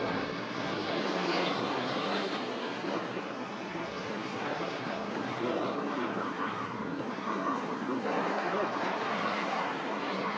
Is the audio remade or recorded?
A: remade